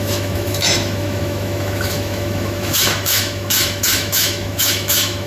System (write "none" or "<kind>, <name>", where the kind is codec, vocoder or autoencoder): autoencoder, DAC-VAE